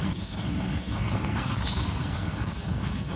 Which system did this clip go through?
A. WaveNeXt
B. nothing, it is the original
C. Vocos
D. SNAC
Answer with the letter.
D